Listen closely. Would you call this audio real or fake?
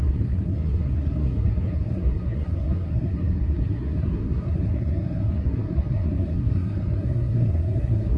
fake